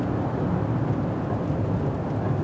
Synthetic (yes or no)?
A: no